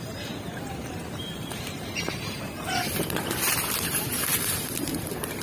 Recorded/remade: remade